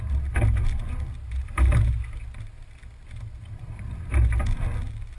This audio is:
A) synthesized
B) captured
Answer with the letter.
B